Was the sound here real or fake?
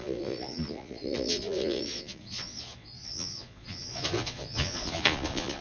fake